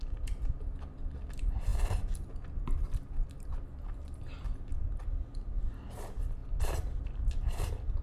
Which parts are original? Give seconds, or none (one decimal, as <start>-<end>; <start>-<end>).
0.0-8.0